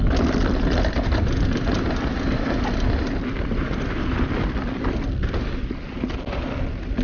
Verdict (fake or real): real